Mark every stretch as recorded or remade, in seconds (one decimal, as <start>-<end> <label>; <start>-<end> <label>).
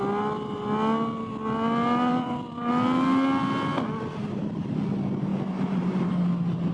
0.0-2.1 recorded; 2.1-2.7 remade; 2.7-5.3 recorded; 5.3-6.1 remade; 6.1-6.7 recorded